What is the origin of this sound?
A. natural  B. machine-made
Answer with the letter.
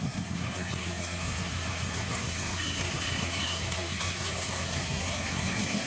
B